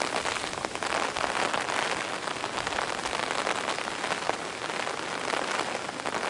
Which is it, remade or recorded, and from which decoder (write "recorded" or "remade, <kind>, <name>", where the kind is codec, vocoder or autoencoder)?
recorded